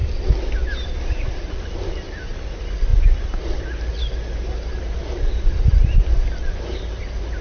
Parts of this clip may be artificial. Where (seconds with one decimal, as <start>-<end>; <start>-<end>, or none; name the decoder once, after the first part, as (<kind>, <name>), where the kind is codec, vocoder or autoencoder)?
none